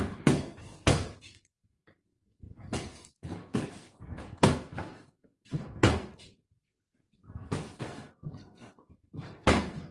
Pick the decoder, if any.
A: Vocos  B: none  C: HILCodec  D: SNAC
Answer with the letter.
D